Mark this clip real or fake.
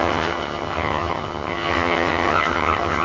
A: fake